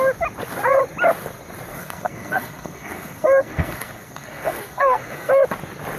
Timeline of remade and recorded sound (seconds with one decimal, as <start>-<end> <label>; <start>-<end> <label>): 0.0-1.7 recorded; 1.7-5.3 remade; 5.3-6.0 recorded